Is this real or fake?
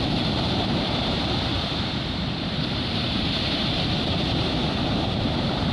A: fake